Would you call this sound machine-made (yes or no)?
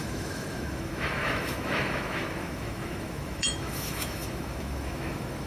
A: yes